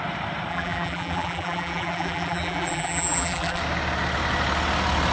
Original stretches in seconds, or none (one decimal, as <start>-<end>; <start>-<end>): 0.0-0.5; 3.6-5.1